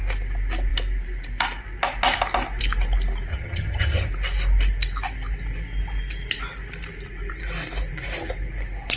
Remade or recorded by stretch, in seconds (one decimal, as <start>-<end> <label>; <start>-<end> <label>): 0.0-3.3 recorded; 3.3-4.1 remade; 4.1-9.0 recorded